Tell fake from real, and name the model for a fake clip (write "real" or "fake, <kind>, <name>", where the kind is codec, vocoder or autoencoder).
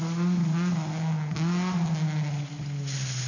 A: real